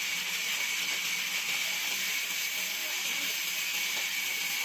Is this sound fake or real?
real